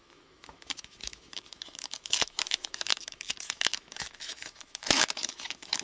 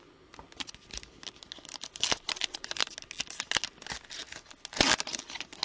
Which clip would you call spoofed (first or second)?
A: first